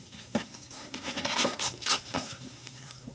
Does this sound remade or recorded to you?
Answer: remade